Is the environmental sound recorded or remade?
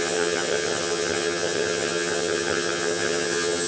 remade